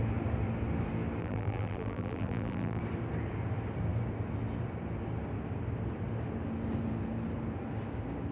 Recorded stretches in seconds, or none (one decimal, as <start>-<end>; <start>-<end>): 0.0-1.2; 2.8-8.3